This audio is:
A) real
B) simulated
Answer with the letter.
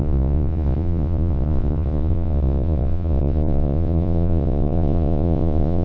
B